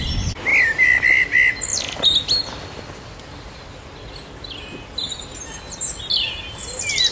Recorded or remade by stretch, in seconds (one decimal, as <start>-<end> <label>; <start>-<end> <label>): 0.0-7.1 recorded